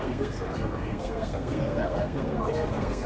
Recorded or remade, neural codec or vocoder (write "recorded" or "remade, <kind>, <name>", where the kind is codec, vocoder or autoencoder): remade, codec, SNAC